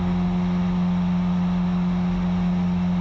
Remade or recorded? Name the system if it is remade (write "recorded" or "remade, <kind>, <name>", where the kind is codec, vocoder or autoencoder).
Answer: recorded